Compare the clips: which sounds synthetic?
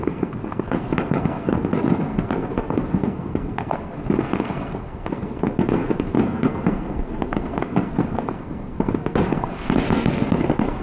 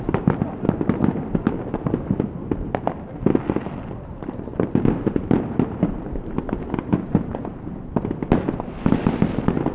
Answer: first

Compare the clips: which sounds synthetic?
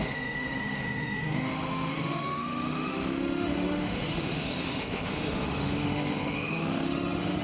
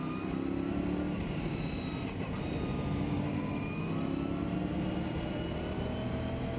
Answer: first